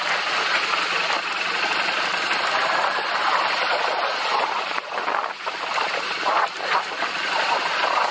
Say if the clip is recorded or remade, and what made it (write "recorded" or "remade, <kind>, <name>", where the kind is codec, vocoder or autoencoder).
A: recorded